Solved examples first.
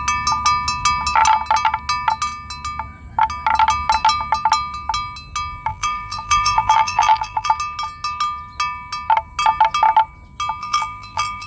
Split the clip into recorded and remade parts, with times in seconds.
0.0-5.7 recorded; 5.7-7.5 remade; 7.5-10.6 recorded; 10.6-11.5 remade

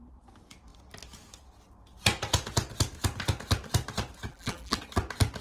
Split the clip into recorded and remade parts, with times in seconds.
0.0-4.3 recorded; 4.3-4.8 remade; 4.8-5.4 recorded